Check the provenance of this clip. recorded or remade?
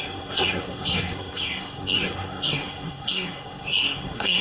remade